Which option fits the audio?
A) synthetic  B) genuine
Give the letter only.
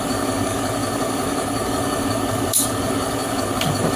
A